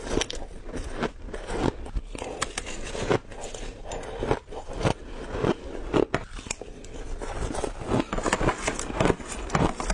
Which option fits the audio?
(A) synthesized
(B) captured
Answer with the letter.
B